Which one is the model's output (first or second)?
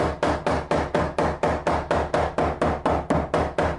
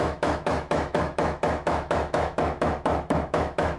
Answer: second